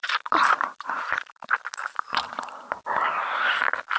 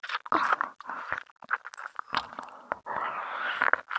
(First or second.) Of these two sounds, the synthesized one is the first